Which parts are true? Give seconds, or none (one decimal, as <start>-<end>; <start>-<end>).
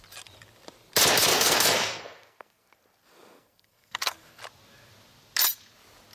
0.0-1.3; 2.7-3.1; 4.4-6.1